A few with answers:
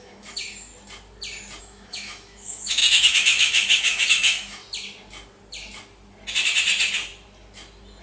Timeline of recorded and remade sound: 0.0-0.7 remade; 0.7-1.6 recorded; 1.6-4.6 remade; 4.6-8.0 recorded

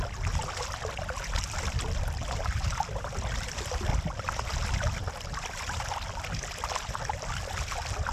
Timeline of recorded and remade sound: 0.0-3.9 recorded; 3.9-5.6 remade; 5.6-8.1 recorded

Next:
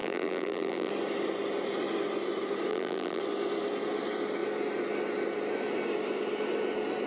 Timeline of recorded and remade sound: 0.0-0.9 remade; 0.9-2.7 recorded; 2.7-3.2 remade; 3.2-7.1 recorded

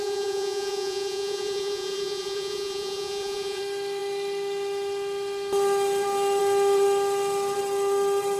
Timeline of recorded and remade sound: 0.0-3.6 remade; 3.6-8.4 recorded

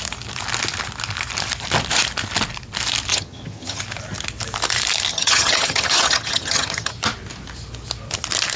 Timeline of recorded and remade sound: 0.0-3.1 recorded; 3.1-3.8 remade; 3.8-5.1 recorded; 5.1-6.9 remade; 6.9-8.6 recorded

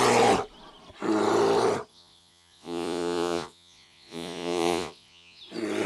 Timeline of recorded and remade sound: 0.0-1.9 recorded; 1.9-5.4 remade; 5.4-5.9 recorded